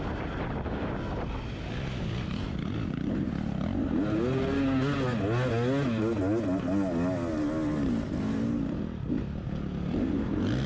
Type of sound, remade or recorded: recorded